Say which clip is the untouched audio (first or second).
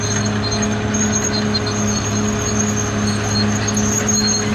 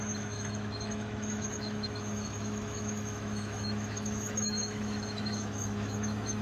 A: first